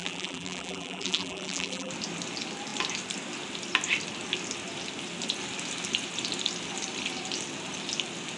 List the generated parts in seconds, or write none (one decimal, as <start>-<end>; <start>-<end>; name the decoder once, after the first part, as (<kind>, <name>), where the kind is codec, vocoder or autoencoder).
0.0-1.9 (vocoder, BigVGAN v2)